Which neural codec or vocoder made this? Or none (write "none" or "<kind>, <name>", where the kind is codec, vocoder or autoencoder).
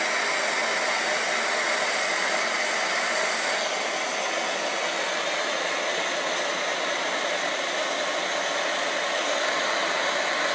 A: none